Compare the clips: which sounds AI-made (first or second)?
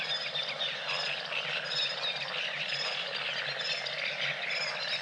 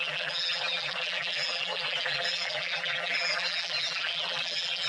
second